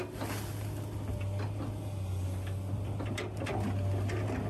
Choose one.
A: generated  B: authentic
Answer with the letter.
A